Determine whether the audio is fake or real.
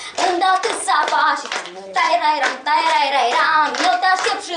fake